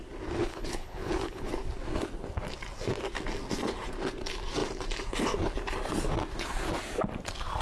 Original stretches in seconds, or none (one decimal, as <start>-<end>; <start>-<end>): 0.0-0.4; 1.5-7.6